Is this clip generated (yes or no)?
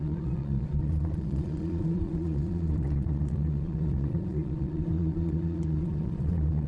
yes